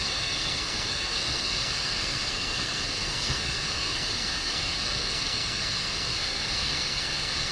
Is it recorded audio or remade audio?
remade